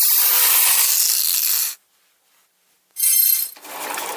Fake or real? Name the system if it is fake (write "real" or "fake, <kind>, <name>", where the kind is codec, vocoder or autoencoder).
real